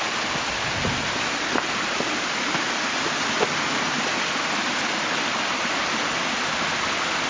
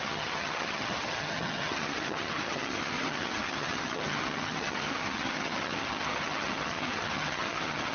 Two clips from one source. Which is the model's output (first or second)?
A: second